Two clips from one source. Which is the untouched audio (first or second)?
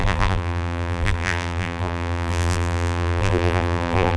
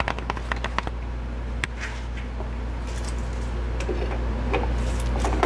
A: second